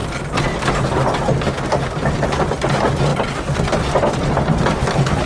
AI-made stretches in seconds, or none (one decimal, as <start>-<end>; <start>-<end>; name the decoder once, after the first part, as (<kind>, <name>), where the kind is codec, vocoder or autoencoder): none